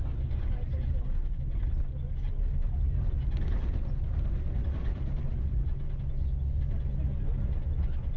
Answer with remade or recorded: recorded